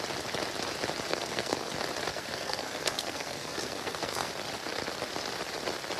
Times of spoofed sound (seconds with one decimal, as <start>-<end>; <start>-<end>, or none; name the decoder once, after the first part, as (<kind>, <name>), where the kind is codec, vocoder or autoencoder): 1.1-1.7 (codec, SNAC); 2.1-4.3